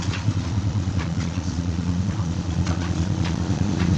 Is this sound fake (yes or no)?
yes